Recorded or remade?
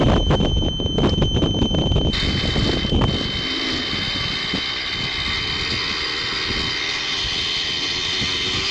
recorded